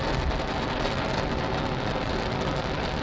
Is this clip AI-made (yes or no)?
no